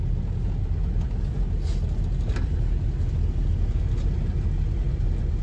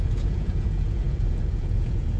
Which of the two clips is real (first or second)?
first